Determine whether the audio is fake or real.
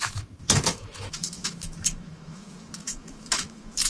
fake